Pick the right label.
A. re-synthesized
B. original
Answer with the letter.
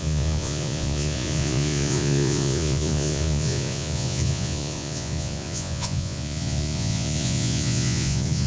A